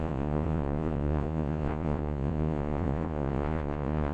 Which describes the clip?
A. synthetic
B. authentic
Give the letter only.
A